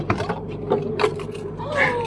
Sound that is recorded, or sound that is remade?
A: remade